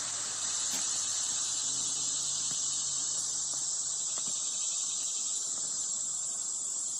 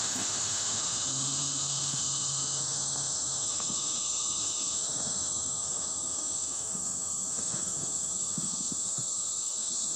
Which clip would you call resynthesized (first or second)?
second